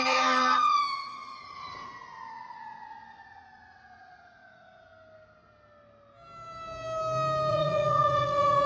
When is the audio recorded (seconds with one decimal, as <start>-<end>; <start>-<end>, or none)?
4.9-7.5